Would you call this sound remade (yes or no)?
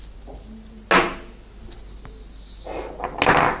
no